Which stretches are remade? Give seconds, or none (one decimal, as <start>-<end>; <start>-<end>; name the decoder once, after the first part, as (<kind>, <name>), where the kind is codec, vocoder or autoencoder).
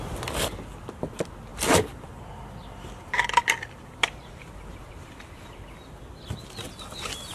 1.5-2.2 (vocoder, BigVGAN v2); 2.6-5.8